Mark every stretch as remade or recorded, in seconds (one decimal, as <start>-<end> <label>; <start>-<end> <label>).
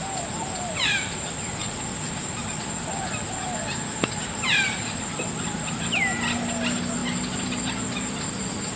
0.0-8.8 recorded